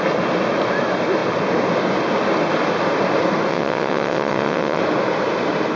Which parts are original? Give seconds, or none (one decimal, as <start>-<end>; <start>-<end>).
0.0-3.5; 4.8-5.8